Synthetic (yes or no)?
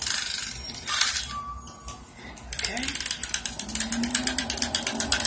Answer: no